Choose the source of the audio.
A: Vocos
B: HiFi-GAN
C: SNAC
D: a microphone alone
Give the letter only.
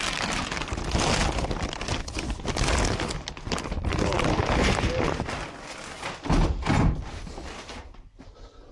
D